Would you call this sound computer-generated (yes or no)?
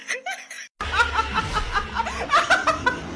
no